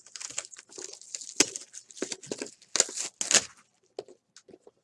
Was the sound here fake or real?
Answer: real